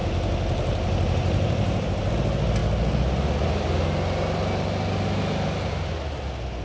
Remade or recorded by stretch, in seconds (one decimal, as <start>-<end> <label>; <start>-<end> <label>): 0.0-2.1 remade; 2.1-6.6 recorded